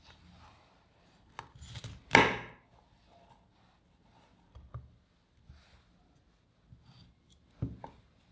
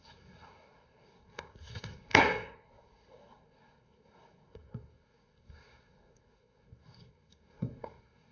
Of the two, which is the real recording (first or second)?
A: first